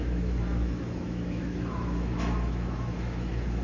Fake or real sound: fake